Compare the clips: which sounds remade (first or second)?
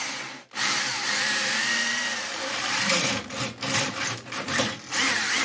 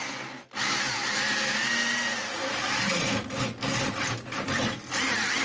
first